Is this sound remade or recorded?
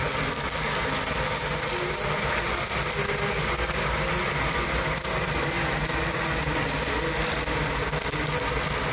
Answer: recorded